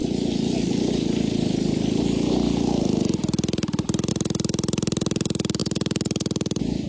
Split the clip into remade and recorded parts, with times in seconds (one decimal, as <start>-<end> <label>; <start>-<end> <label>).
0.0-6.9 recorded